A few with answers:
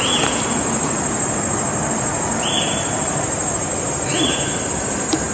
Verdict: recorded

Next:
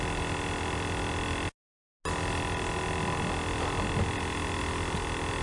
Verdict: recorded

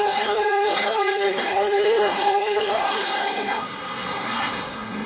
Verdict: remade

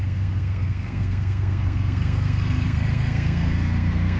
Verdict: remade